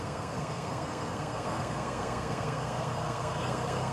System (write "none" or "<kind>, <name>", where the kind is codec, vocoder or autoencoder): codec, SNAC